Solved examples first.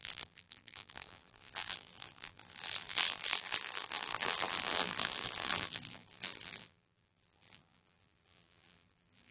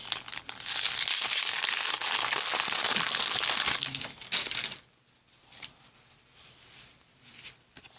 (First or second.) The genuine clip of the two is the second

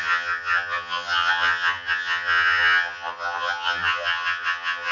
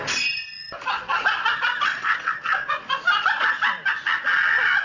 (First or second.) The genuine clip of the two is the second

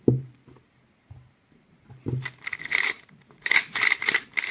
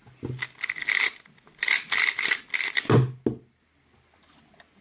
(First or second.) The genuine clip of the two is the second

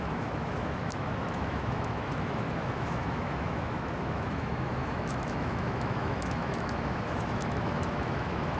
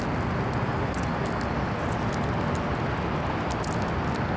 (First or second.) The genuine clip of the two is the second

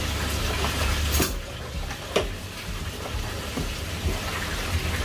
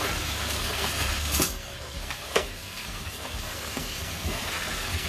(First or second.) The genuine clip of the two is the first